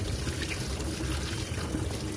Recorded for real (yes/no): yes